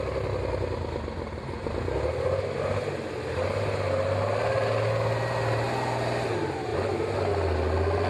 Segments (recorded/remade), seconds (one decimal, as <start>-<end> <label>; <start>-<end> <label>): 0.0-8.1 recorded